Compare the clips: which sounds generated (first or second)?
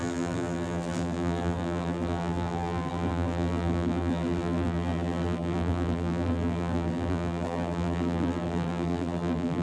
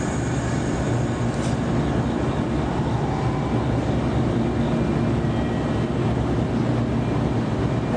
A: first